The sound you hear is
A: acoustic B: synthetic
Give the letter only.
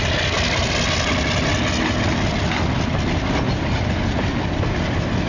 A